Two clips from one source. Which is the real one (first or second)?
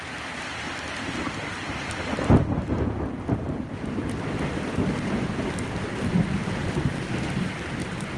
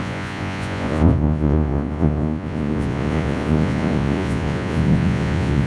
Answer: first